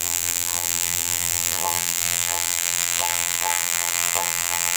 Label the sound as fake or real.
fake